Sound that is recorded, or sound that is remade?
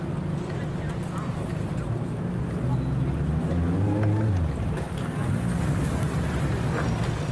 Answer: recorded